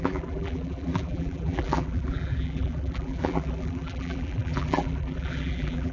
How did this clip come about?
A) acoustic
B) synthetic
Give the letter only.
B